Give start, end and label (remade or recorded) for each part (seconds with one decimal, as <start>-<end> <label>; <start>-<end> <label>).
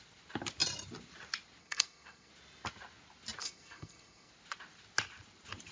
0.0-1.6 recorded; 1.6-2.3 remade; 2.3-3.4 recorded; 3.4-4.3 remade; 4.3-5.7 recorded